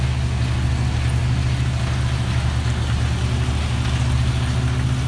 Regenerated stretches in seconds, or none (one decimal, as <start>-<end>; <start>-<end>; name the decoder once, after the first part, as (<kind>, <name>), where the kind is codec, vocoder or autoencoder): none